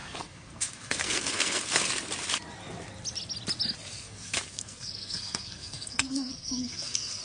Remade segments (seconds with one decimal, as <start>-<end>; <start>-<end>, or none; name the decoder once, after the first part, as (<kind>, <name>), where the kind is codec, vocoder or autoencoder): 0.0-1.8 (codec, SNAC); 3.9-7.2